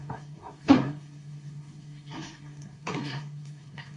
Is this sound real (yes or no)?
no